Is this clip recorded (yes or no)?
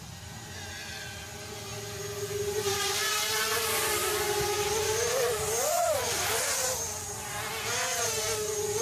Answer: yes